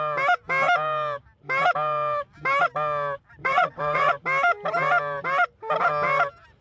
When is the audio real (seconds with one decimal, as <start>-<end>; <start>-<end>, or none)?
0.0-3.4; 4.1-6.6